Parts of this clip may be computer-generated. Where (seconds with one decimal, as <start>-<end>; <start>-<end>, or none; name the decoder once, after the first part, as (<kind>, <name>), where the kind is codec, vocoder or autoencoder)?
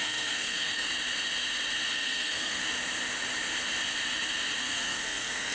0.0-0.9 (codec, SNAC); 1.9-2.6; 4.6-5.5